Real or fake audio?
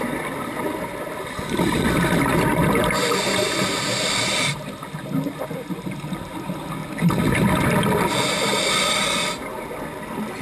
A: real